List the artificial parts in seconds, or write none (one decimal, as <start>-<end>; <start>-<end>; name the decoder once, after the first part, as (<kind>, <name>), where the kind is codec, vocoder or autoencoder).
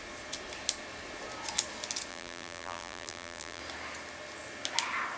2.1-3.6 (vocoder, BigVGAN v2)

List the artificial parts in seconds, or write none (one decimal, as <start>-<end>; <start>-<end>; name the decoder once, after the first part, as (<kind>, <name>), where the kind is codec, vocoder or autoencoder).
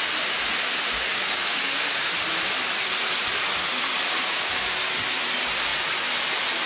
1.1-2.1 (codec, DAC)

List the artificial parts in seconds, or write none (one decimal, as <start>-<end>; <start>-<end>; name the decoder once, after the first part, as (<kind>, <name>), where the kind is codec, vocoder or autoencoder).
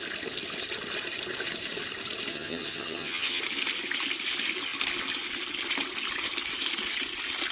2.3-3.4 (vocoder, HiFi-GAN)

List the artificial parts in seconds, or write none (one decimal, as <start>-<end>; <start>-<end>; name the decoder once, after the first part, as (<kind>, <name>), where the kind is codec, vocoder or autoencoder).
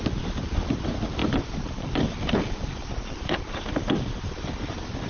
1.2-4.3 (vocoder, BigVGAN v2)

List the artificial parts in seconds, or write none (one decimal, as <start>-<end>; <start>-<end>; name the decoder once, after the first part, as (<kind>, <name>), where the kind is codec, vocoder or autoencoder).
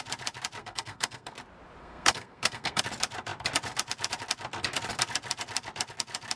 0.6-1.3 (codec, SNAC); 1.8-2.8